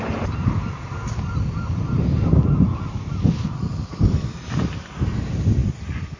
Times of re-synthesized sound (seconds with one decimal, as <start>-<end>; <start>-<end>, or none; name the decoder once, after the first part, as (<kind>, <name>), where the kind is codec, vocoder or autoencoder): none